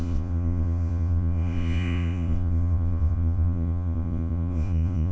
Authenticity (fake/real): fake